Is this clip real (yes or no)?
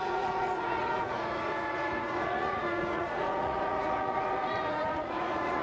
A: no